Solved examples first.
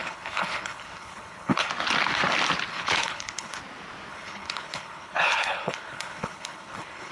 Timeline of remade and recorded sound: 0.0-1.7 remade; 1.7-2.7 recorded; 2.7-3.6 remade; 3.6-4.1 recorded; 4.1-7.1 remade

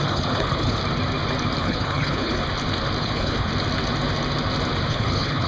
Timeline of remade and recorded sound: 0.0-0.8 remade; 0.8-1.6 recorded; 1.6-2.4 remade; 2.4-3.0 recorded; 3.0-3.5 remade; 3.5-4.9 recorded; 4.9-5.5 remade

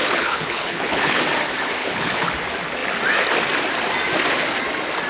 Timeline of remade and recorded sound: 0.0-1.2 remade; 1.2-1.8 recorded; 1.8-2.3 remade; 2.3-5.1 recorded

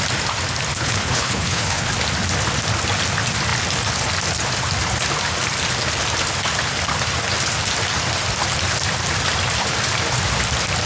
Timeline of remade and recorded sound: 0.0-0.7 recorded; 0.7-1.9 remade; 1.9-10.9 recorded

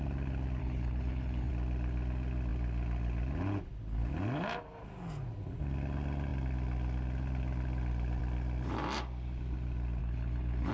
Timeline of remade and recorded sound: 0.0-0.6 recorded; 0.6-1.5 remade; 1.5-10.0 recorded; 10.0-10.7 remade